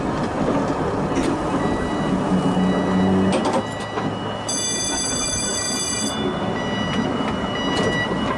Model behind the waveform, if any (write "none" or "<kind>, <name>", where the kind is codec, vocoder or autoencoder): none